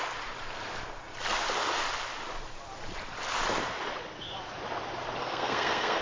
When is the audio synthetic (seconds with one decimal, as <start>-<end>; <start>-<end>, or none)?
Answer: 5.2-6.0